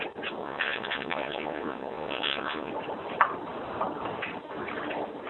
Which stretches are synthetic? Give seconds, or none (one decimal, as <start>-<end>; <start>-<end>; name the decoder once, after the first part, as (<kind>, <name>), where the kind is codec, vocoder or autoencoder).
0.4-2.7 (vocoder, Vocos)